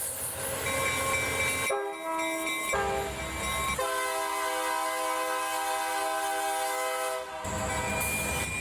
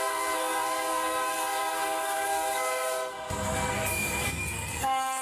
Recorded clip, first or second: first